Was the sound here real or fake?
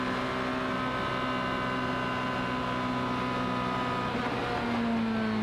real